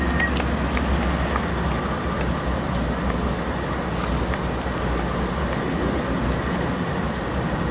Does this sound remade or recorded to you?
recorded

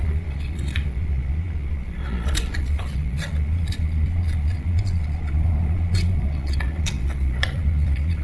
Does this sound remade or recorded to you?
remade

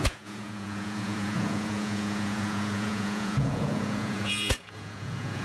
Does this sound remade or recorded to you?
remade